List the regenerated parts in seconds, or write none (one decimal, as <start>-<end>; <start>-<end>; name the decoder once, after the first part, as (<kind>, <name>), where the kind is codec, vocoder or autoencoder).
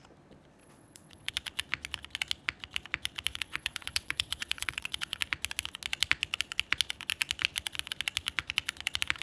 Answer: 0.6-1.3 (vocoder, WaveNeXt); 3.3-5.2